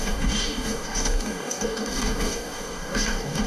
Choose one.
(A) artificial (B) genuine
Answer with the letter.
A